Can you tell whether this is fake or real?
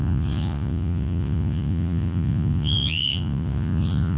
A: fake